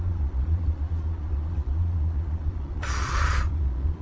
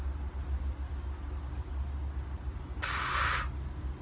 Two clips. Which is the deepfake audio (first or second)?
first